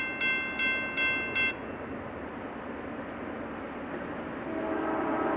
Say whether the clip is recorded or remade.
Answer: recorded